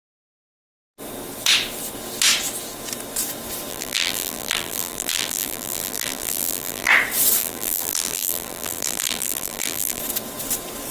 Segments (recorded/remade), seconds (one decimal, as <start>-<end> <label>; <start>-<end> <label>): 0.0-3.7 recorded; 3.7-6.9 remade; 6.9-7.4 recorded; 7.4-10.0 remade; 10.0-10.9 recorded